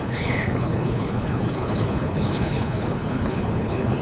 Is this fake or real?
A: fake